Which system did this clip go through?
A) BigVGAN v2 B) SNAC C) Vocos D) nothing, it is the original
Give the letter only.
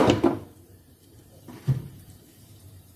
A